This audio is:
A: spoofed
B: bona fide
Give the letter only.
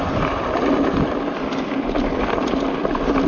A